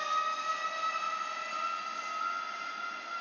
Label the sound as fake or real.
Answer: real